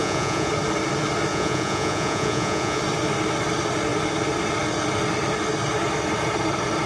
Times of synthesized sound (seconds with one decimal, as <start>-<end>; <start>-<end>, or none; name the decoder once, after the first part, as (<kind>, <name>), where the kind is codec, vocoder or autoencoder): 0.0-0.5 (vocoder, Vocos); 1.3-2.8